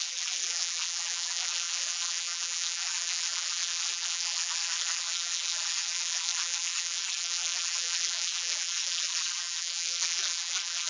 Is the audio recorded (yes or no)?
no